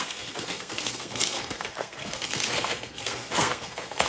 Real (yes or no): no